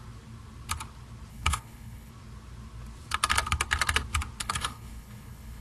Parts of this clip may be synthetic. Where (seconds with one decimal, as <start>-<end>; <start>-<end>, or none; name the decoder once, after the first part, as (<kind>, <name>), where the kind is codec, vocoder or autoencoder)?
1.3-2.1 (codec, HILCodec); 4.4-5.6